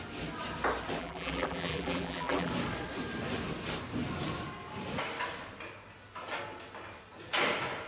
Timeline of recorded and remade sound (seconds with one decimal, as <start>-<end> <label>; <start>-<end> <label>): 0.0-1.0 recorded; 1.0-2.5 remade; 2.5-7.9 recorded